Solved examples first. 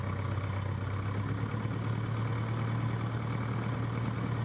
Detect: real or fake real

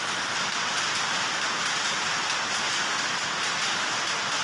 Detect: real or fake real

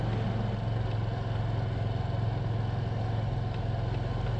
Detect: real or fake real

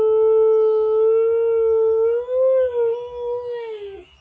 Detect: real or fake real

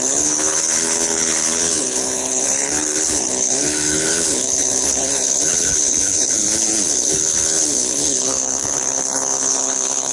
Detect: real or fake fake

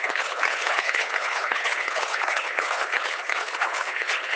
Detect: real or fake fake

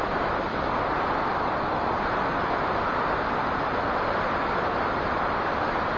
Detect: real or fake real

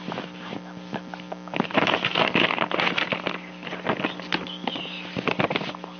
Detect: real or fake real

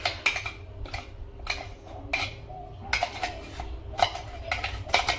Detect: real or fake real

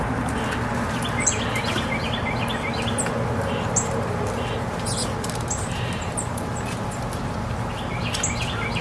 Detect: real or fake real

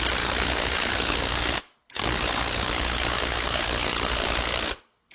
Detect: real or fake fake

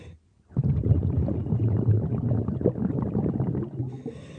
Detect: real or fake real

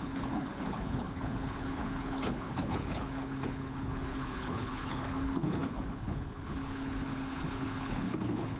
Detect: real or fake fake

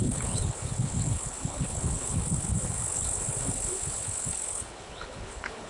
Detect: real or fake fake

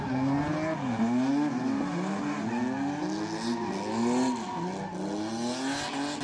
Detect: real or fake real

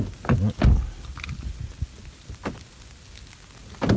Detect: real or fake real